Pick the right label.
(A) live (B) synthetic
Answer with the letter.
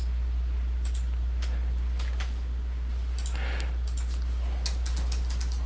A